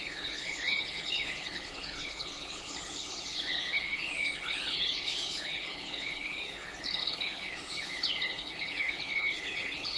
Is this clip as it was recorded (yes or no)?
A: no